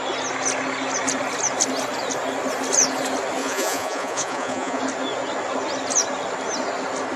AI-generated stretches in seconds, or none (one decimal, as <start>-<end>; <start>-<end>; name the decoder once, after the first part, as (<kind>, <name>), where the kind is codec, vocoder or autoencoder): 3.4-4.8 (vocoder, Vocos)